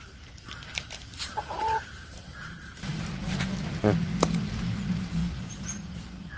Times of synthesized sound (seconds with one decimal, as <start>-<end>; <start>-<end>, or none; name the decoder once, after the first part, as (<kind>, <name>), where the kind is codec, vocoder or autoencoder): 0.0-2.9 (vocoder, BigVGAN v2); 4.4-6.4